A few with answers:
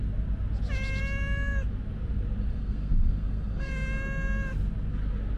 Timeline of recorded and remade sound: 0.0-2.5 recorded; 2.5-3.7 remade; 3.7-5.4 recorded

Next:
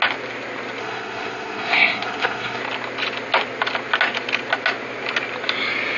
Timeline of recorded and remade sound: 0.0-0.8 recorded; 0.8-2.6 remade; 2.6-6.0 recorded

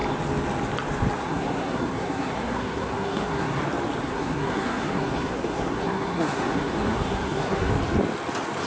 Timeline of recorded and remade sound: 0.0-1.2 recorded; 1.2-3.6 remade; 3.6-4.0 recorded; 4.0-7.7 remade; 7.7-8.7 recorded

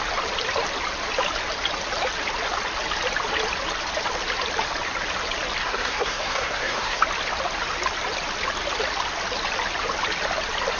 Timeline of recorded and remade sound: 0.0-5.6 recorded; 5.6-7.0 remade; 7.0-10.8 recorded

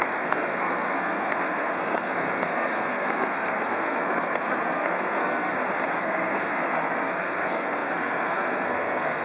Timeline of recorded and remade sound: 0.0-5.5 remade; 5.5-6.0 recorded; 6.0-9.2 remade